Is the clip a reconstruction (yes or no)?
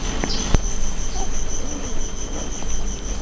no